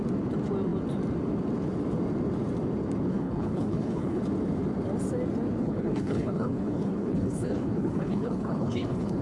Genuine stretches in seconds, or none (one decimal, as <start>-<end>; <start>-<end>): 0.0-3.1; 4.2-5.6